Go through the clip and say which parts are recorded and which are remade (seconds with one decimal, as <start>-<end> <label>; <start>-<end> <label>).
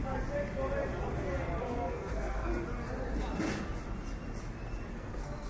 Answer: 0.0-1.6 recorded; 1.6-2.5 remade; 2.5-4.9 recorded; 4.9-5.5 remade